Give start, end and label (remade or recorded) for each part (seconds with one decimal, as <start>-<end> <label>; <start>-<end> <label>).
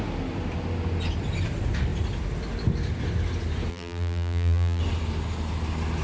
0.0-3.7 recorded; 3.7-4.8 remade; 4.8-6.0 recorded